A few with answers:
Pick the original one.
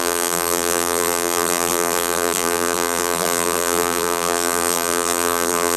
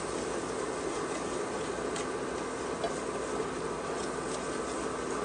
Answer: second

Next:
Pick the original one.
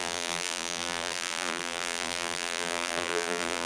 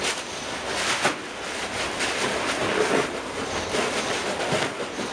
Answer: second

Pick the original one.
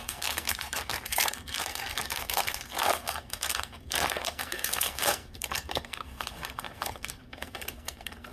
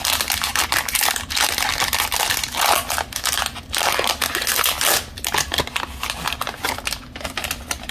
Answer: second